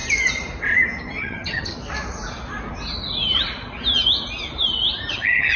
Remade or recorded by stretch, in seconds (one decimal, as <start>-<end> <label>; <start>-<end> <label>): 0.0-1.2 recorded; 1.2-1.7 remade; 1.7-5.1 recorded; 5.1-5.6 remade